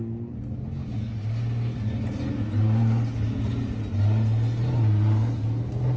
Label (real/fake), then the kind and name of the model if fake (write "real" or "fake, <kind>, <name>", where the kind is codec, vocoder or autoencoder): real